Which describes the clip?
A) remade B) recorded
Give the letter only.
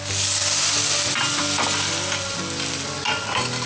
B